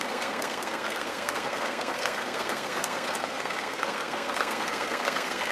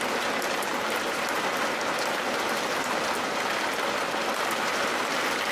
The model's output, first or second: first